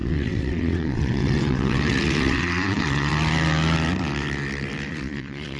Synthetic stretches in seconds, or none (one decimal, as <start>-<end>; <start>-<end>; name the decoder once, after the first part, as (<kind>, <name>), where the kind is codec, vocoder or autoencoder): 0.0-3.1 (vocoder, WaveNeXt); 4.9-5.6